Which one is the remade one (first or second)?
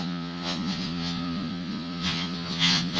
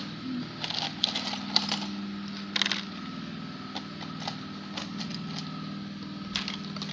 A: first